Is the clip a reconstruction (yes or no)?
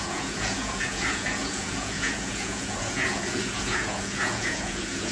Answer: yes